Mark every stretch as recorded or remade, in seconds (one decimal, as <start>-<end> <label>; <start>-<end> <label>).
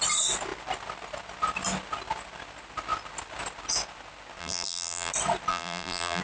0.0-4.4 recorded; 4.4-5.1 remade; 5.1-5.5 recorded; 5.5-6.2 remade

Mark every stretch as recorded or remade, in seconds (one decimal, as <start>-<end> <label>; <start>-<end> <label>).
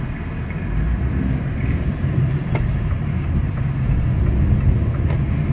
0.0-0.9 recorded; 0.9-2.8 remade; 2.8-5.5 recorded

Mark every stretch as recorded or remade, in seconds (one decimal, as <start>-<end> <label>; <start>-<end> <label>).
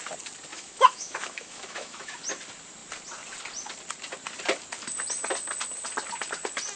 0.0-0.5 recorded; 0.5-2.2 remade; 2.2-6.8 recorded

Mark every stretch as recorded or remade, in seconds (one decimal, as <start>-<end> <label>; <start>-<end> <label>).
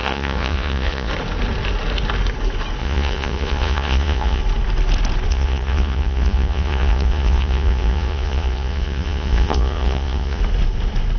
0.0-1.1 remade; 1.1-2.8 recorded; 2.8-4.4 remade; 4.4-5.3 recorded; 5.3-10.4 remade; 10.4-11.2 recorded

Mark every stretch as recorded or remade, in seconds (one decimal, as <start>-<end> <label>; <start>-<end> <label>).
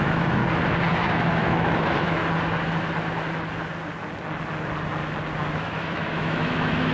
0.0-0.4 remade; 0.4-0.9 recorded; 0.9-2.2 remade; 2.2-5.5 recorded; 5.5-6.9 remade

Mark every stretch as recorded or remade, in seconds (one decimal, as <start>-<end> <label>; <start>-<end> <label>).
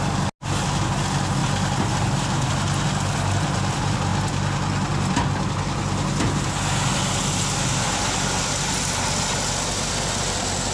0.0-10.7 recorded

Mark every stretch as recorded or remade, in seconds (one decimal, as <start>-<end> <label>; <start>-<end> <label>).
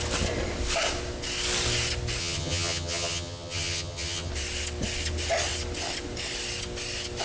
0.0-2.2 recorded; 2.2-4.3 remade; 4.3-7.2 recorded